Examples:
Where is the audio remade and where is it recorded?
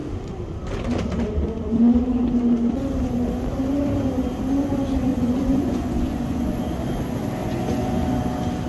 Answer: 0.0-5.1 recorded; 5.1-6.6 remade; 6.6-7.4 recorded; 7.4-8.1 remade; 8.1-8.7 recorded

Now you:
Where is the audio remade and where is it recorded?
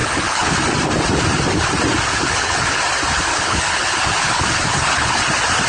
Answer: 0.0-0.6 remade; 0.6-2.1 recorded; 2.1-2.8 remade; 2.8-3.3 recorded; 3.3-5.2 remade; 5.2-5.7 recorded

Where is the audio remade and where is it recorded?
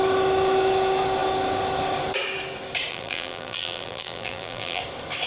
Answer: 0.0-2.9 recorded; 2.9-4.8 remade; 4.8-5.3 recorded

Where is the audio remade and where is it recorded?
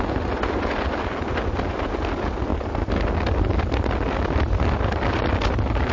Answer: 0.0-5.9 recorded